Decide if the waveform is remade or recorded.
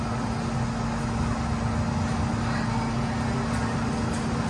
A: recorded